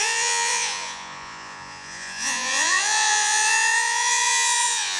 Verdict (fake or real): fake